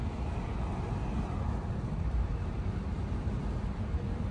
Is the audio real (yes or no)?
yes